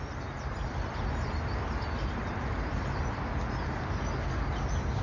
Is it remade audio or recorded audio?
recorded